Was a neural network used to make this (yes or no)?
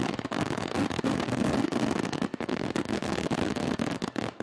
yes